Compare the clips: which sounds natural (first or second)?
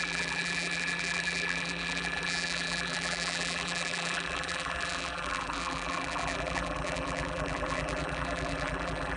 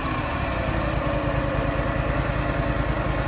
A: second